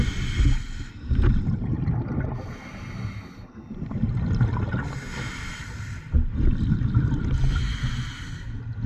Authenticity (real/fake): real